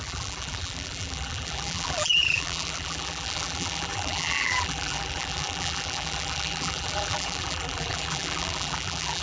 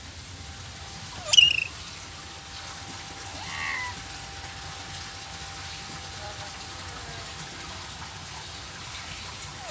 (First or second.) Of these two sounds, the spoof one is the first